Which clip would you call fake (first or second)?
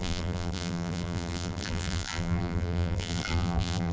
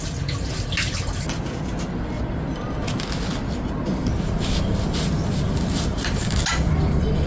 first